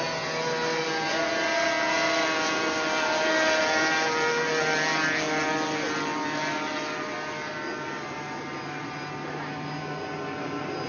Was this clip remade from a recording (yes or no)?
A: no